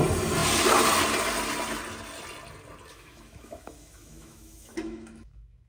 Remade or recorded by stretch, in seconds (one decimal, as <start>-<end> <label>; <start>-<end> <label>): 0.0-2.9 recorded; 2.9-5.7 remade